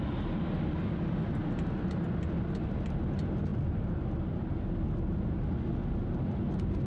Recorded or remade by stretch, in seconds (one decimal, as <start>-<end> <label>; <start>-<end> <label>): 0.0-6.9 recorded